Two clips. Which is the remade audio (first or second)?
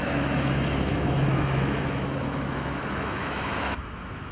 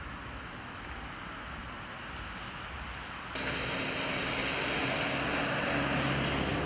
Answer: first